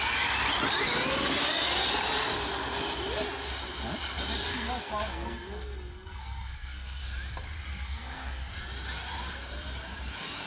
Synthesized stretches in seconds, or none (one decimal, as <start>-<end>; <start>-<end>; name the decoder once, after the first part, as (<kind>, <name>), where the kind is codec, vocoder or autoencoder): 4.5-7.0 (codec, SNAC); 7.7-8.5